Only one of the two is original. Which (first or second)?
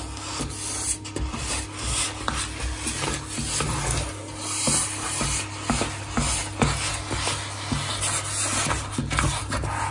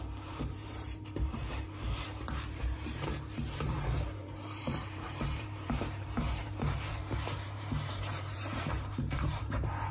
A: first